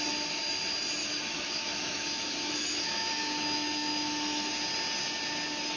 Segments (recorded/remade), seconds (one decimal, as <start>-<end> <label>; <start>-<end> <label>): 0.0-1.0 recorded; 1.0-4.5 remade; 4.5-5.8 recorded